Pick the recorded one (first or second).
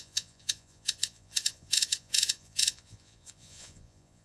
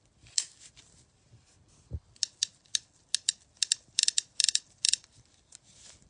second